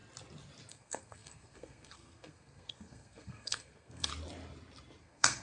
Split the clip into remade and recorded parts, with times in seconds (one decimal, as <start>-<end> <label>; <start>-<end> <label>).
0.0-0.7 recorded; 0.7-4.1 remade; 4.1-5.0 recorded; 5.0-5.4 remade